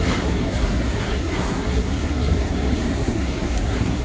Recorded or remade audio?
remade